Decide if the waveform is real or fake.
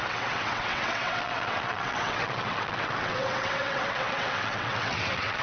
fake